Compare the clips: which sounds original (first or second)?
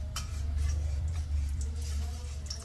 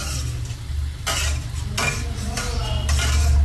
second